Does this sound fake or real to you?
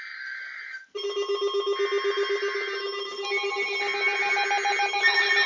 real